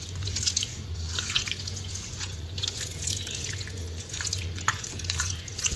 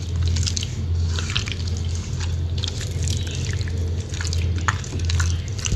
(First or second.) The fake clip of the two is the first